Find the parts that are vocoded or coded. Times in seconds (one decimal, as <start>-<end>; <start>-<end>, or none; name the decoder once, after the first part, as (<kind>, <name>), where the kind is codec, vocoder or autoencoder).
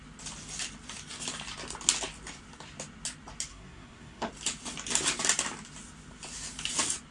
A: 3.5-4.3 (codec, SNAC)